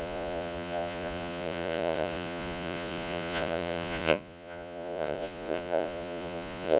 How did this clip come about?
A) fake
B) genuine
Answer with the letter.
A